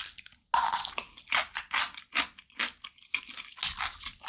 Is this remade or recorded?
recorded